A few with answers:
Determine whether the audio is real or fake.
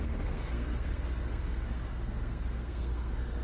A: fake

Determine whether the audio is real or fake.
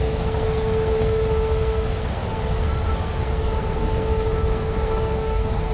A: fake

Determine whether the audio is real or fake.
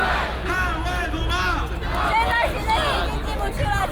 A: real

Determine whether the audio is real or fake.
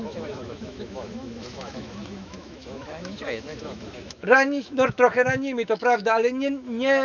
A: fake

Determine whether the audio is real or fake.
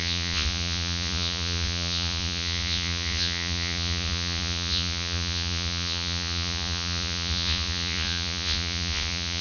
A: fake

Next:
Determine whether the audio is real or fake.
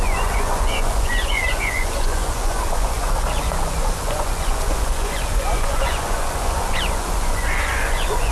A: fake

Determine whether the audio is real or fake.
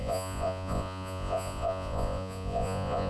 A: fake